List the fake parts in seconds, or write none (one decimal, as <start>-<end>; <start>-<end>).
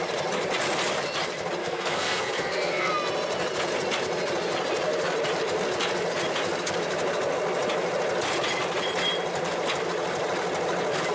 1.6-2.9